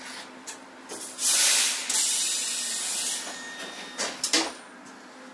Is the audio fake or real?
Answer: real